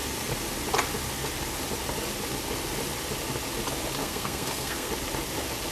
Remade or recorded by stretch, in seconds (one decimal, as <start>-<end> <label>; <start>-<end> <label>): 0.0-4.0 recorded; 4.0-4.9 remade; 4.9-5.7 recorded